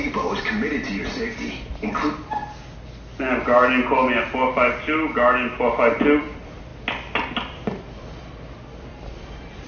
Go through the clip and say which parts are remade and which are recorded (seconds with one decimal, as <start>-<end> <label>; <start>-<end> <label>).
0.0-2.4 remade; 2.4-6.2 recorded; 6.2-6.7 remade; 6.7-7.3 recorded; 7.3-9.7 remade